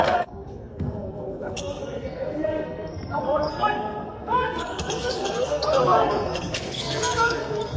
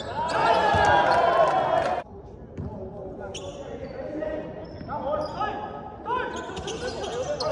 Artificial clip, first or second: first